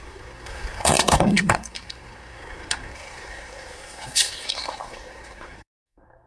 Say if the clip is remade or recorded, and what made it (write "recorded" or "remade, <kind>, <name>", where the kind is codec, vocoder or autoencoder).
remade, codec, SNAC